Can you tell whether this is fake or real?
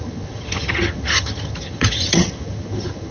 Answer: fake